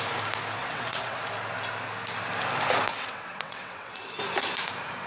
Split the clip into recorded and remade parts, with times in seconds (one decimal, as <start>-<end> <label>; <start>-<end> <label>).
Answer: 0.0-0.6 recorded; 0.6-1.2 remade; 1.2-2.9 recorded; 2.9-4.2 remade; 4.2-5.1 recorded

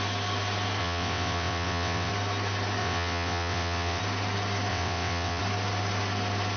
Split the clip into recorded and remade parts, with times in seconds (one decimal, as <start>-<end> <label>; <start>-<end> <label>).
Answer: 0.0-0.8 recorded; 0.8-2.1 remade; 2.1-2.8 recorded; 2.8-4.0 remade; 4.0-4.7 recorded; 4.7-5.4 remade; 5.4-6.6 recorded

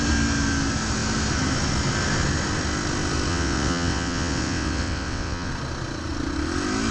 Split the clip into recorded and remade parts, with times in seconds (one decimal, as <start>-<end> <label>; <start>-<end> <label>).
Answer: 0.0-3.3 recorded; 3.3-5.5 remade; 5.5-6.9 recorded

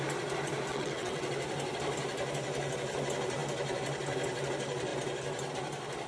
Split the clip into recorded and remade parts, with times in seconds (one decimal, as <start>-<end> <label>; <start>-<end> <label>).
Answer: 0.0-0.7 recorded; 0.7-1.3 remade; 1.3-6.1 recorded

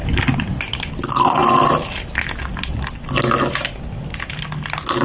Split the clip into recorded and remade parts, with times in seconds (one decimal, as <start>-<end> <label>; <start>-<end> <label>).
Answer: 0.0-5.0 recorded

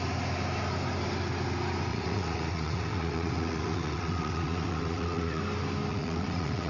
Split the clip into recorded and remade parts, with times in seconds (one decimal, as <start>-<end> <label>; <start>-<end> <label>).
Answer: 0.0-1.9 recorded; 1.9-5.4 remade; 5.4-5.9 recorded; 5.9-6.7 remade

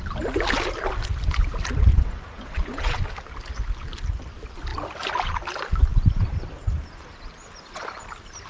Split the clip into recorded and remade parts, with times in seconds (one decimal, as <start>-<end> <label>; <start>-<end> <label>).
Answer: 0.0-1.9 recorded; 1.9-3.0 remade; 3.0-8.5 recorded